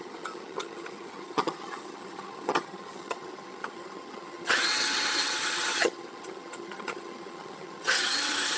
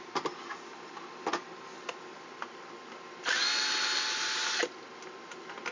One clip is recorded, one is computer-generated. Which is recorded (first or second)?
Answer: second